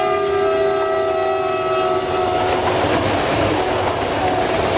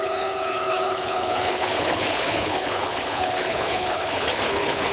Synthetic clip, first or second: second